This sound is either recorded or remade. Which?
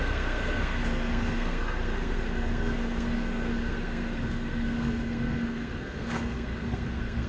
remade